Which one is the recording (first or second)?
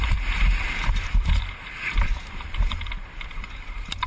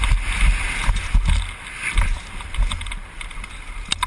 second